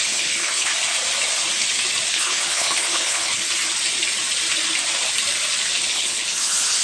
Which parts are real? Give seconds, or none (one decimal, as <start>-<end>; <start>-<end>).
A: 0.7-2.1; 3.4-5.9